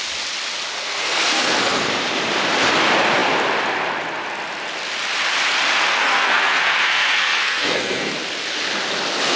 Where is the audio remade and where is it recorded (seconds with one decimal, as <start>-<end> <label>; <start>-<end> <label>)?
0.0-0.7 recorded; 0.7-1.9 remade; 1.9-5.9 recorded; 5.9-8.1 remade; 8.1-9.4 recorded